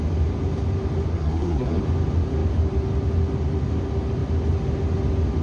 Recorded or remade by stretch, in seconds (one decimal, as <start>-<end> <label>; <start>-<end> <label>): 0.0-1.1 recorded; 1.1-1.8 remade; 1.8-5.4 recorded